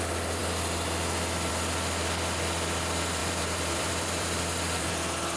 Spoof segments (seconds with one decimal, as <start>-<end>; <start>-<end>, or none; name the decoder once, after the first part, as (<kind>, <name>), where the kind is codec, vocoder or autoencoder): 3.2-4.9 (vocoder, BigVGAN v2)

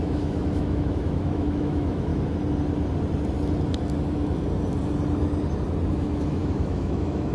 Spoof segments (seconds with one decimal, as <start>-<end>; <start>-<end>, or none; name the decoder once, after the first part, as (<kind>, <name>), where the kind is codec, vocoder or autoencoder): 0.0-2.1 (autoencoder, DAC-VAE); 5.9-7.3

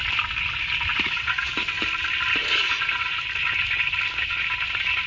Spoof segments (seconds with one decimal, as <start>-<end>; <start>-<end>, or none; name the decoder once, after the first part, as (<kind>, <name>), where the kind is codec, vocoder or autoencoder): 0.9-1.5 (vocoder, Vocos); 2.4-3.2

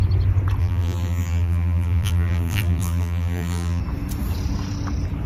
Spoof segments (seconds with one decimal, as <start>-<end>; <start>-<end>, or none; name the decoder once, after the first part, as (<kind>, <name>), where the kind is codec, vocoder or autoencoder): 0.6-3.8 (vocoder, BigVGAN v2)

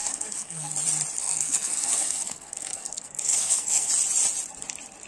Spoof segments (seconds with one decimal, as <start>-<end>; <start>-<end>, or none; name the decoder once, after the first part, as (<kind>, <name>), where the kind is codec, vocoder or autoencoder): 0.0-0.7 (codec, SNAC); 1.2-3.9

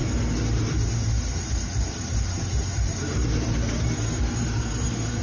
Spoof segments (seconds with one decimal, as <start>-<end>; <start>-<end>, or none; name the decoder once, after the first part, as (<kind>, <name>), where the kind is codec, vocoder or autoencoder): 0.7-5.2 (vocoder, BigVGAN v2)

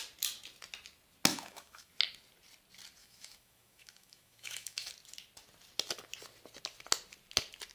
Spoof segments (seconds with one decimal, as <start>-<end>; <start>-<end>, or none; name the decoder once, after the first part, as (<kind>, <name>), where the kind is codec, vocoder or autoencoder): 1.3-1.9 (autoencoder, DAC-VAE); 3.0-4.9